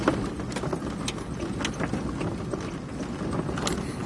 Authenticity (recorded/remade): recorded